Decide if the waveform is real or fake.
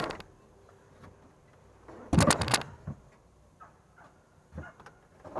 real